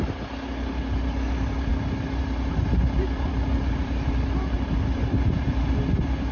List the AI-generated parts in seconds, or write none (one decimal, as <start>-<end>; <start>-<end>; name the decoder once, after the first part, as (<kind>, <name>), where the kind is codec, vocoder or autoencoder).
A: none